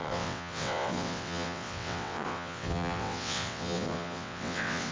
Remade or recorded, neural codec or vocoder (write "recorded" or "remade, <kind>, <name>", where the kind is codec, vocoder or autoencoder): remade, vocoder, WaveNeXt